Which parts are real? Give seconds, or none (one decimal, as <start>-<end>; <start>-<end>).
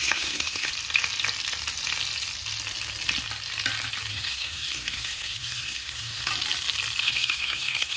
0.7-4.1; 6.3-7.0